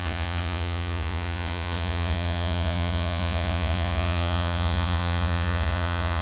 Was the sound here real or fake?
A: fake